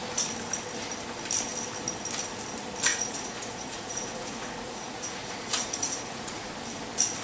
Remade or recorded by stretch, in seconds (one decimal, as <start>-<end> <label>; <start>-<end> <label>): 0.0-2.9 recorded; 2.9-6.5 remade; 6.5-7.2 recorded

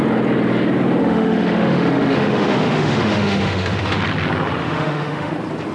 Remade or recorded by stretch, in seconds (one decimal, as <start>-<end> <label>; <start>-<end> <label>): 0.0-1.0 recorded; 1.0-4.0 remade; 4.0-4.6 recorded; 4.6-5.3 remade; 5.3-5.7 recorded

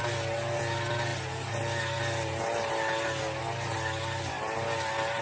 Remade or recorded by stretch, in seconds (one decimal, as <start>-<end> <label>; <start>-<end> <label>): 0.0-5.2 recorded